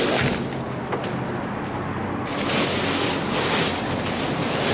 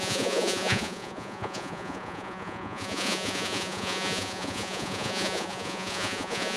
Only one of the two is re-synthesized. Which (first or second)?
second